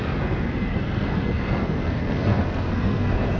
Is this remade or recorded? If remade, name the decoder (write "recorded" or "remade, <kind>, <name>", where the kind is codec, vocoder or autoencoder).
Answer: remade, codec, SNAC